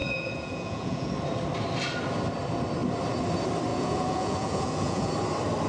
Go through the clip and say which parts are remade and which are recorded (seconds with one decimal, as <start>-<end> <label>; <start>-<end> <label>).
0.0-1.1 remade; 1.1-3.7 recorded; 3.7-5.1 remade; 5.1-5.7 recorded